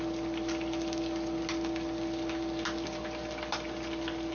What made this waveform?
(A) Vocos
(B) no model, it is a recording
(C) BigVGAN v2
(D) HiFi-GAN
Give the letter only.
B